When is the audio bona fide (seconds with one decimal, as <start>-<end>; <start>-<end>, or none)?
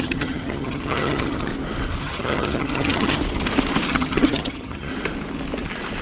1.5-2.0; 3.2-3.9; 4.9-6.0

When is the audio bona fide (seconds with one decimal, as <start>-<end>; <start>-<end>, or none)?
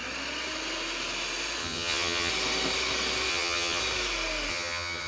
0.0-1.6; 2.3-3.3; 3.8-4.5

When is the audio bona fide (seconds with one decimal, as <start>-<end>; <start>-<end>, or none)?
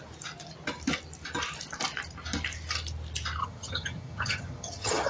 0.0-3.4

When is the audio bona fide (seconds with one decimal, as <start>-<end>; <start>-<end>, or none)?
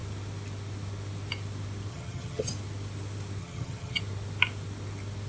0.0-1.9; 2.5-3.4; 4.0-5.3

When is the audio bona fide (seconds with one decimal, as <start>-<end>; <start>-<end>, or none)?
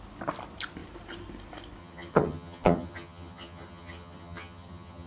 0.0-1.8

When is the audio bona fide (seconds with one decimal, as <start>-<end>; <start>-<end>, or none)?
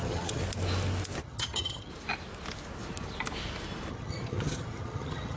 0.4-1.2; 1.9-3.9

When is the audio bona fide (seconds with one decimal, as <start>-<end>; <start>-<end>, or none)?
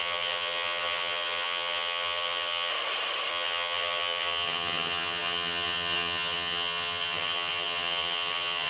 2.7-3.3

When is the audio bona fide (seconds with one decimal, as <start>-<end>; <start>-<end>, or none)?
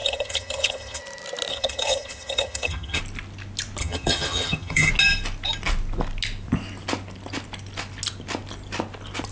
1.0-1.5; 3.0-3.8; 4.9-9.3